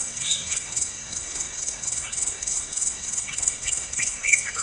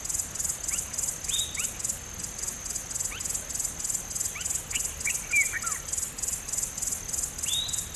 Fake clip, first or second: first